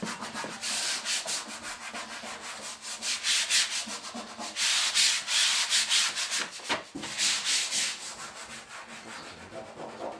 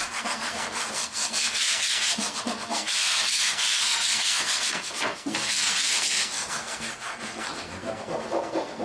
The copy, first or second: second